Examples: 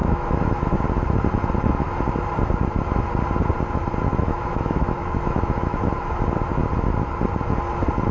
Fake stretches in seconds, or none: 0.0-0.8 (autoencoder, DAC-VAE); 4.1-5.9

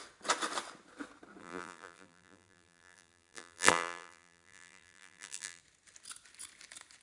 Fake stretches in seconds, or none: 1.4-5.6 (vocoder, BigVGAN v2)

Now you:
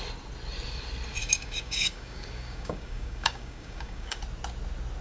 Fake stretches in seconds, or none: 1.2-4.2 (codec, DAC)

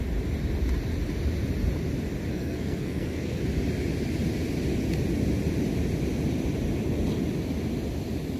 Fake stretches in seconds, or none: 2.3-3.4 (codec, SNAC)

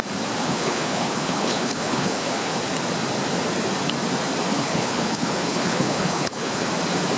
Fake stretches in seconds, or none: 0.4-2.6 (codec, HILCodec); 4.5-6.7

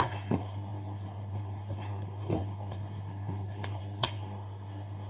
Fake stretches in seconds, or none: 0.0-5.1 (codec, SNAC)